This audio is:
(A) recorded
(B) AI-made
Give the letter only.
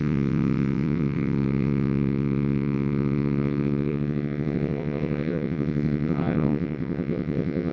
B